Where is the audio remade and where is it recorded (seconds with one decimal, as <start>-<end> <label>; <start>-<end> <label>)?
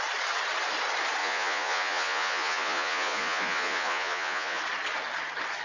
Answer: 0.0-1.2 recorded; 1.2-4.6 remade; 4.6-5.6 recorded